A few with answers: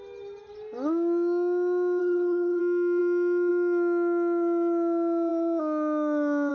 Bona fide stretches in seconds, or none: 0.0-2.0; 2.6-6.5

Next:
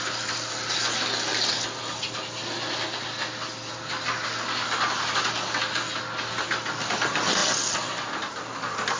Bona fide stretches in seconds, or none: 0.0-9.0

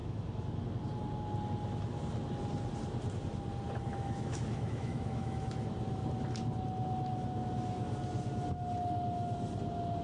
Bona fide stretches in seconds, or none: 0.6-3.9; 5.7-10.0

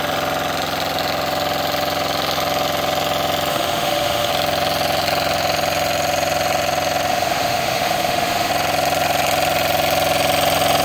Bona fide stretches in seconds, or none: 0.0-3.5; 4.3-7.1; 8.5-10.8

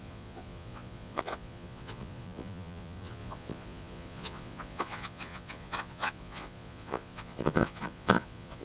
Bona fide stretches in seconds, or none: none

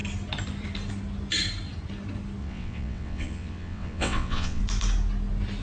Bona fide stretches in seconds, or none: 0.0-2.4; 4.6-5.6

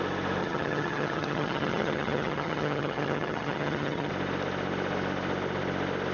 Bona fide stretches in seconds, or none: 0.0-0.4; 4.1-6.1

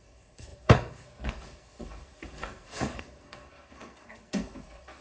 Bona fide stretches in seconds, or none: none